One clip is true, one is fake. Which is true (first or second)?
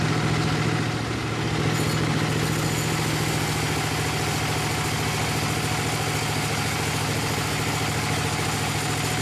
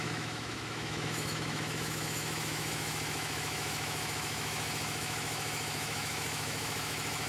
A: first